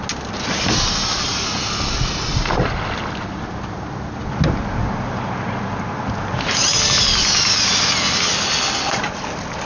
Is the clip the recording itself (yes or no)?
yes